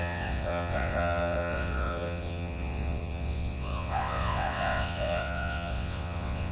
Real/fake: fake